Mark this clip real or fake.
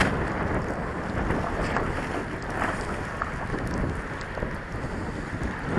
real